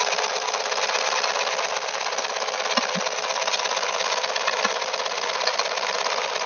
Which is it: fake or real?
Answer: real